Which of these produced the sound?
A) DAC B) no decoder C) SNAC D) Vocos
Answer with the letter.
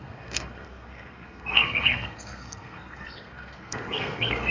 C